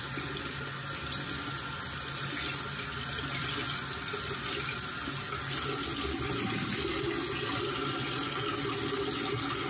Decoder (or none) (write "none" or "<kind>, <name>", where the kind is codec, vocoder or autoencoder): none